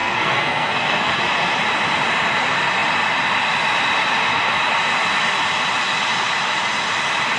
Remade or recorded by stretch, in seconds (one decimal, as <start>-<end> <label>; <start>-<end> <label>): 0.0-1.2 remade; 1.2-7.4 recorded